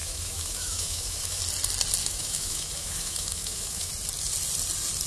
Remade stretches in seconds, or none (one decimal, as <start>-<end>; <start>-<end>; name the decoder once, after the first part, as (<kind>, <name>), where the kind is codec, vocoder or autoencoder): 0.0-1.4 (autoencoder, DAC-VAE); 2.0-3.9